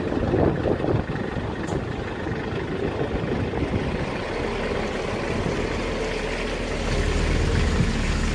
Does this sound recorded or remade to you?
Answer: recorded